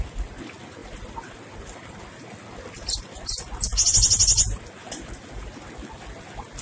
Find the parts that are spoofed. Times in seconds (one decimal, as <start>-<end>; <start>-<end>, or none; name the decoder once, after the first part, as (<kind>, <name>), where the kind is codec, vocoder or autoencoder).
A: none